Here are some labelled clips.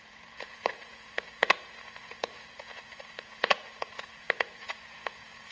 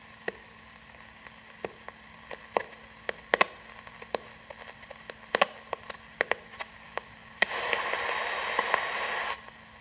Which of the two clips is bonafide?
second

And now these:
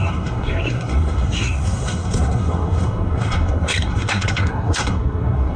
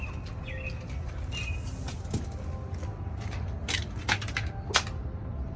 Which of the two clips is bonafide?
second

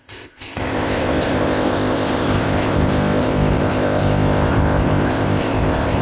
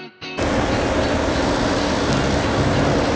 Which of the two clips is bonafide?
second